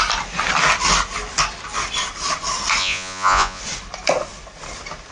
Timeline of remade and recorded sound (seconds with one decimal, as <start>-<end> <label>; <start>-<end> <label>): 0.0-2.8 recorded; 2.8-3.6 remade; 3.6-5.1 recorded